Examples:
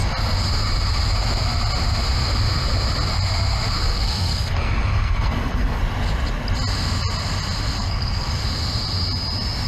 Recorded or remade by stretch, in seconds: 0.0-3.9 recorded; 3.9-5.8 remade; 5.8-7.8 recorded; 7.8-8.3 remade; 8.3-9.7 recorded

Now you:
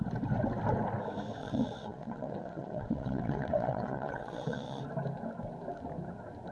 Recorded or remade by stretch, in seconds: 0.0-1.4 recorded; 1.4-4.8 remade; 4.8-6.5 recorded